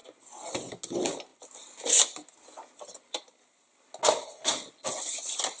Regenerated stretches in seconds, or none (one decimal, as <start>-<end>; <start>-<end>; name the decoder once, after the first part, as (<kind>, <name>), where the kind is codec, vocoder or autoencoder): none